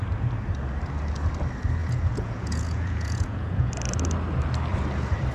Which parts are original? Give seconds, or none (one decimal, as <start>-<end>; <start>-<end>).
0.0-1.8; 3.7-5.3